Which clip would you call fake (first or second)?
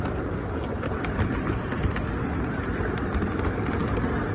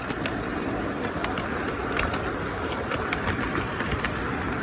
second